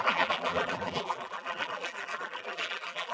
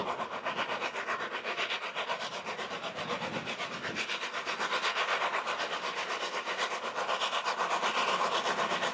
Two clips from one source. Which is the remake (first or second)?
first